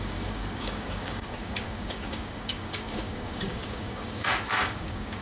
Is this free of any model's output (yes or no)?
no